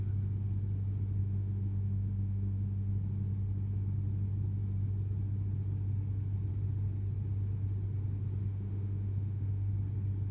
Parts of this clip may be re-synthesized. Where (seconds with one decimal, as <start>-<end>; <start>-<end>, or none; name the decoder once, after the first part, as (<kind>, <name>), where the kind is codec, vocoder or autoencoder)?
1.2-2.9 (autoencoder, DAC-VAE); 8.5-9.7